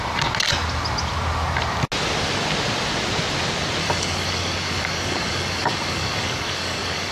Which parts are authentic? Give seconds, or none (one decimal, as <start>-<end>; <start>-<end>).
0.0-3.8